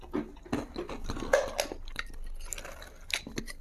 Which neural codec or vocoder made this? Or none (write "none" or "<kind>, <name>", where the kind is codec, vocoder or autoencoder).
none